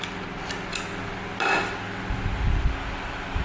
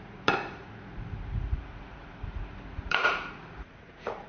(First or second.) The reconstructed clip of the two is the second